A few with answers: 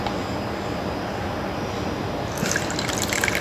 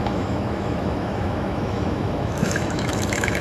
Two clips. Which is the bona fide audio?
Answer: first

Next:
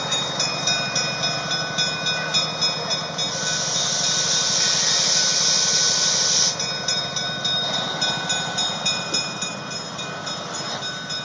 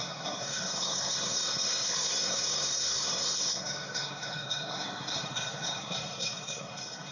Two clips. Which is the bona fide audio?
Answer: first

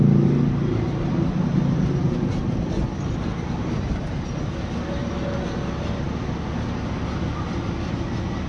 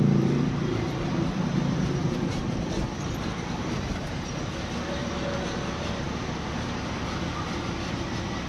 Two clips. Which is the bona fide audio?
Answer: first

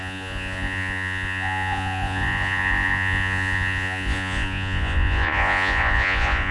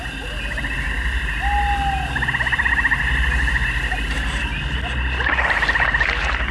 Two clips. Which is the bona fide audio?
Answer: second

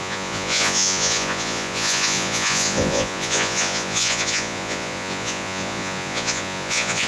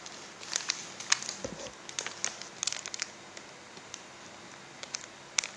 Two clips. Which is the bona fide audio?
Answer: second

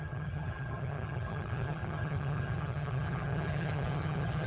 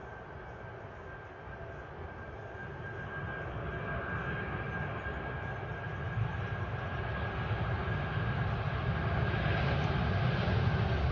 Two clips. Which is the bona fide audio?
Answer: second